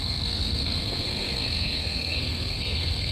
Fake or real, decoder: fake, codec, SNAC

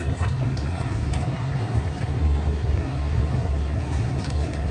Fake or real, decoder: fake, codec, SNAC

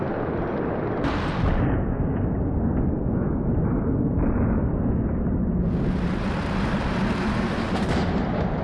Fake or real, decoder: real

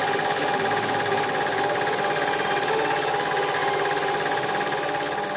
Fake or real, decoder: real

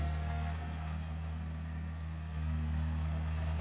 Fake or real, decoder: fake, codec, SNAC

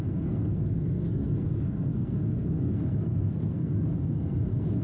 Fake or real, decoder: fake, codec, SNAC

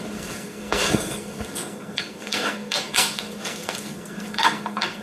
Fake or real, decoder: fake, codec, SNAC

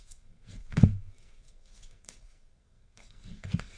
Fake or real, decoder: fake, codec, SNAC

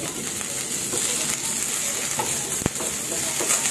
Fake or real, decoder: real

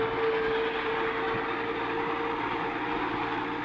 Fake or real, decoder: real